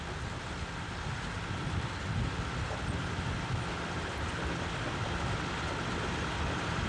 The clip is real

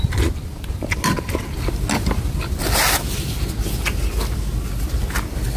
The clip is real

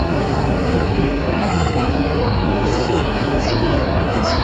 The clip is fake